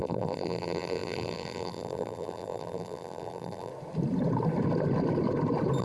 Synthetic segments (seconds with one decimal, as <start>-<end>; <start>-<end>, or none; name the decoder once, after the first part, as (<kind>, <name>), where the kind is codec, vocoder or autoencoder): 0.0-3.7 (vocoder, BigVGAN v2)